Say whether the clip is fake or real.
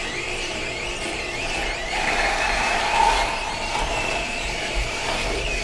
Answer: fake